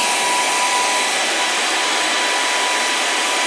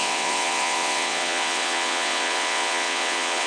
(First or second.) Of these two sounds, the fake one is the second